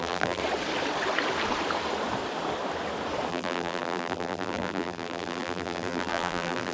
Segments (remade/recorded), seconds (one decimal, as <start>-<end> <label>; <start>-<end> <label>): 0.0-0.4 remade; 0.4-3.3 recorded; 3.3-6.7 remade